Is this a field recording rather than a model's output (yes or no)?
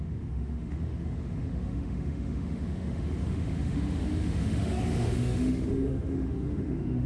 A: no